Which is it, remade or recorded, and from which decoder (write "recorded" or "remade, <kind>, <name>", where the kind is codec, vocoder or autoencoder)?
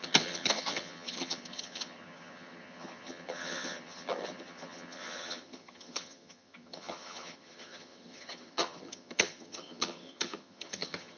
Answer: remade, vocoder, HiFi-GAN